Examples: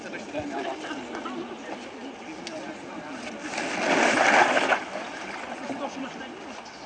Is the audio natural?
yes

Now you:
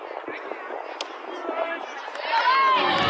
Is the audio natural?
yes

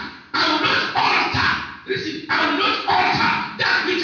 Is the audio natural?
yes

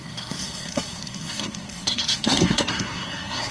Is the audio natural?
no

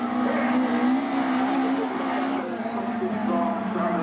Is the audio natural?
yes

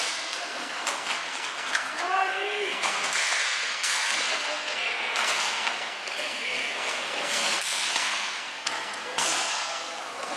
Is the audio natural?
no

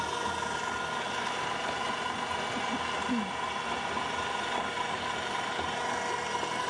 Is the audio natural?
yes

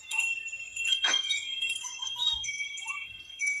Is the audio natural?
no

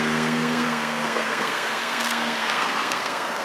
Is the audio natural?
no